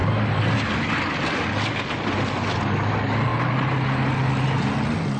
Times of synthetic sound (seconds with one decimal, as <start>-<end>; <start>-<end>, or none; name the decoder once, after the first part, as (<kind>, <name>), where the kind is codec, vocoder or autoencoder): none